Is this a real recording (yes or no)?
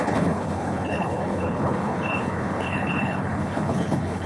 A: no